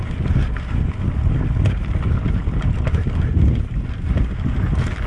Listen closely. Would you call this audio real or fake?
real